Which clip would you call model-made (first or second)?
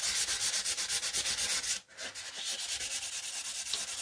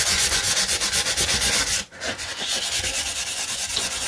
second